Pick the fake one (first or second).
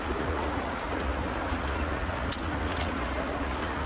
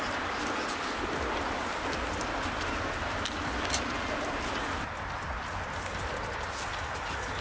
first